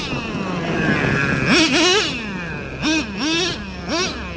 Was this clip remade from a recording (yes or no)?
no